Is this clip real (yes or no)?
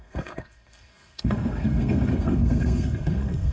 no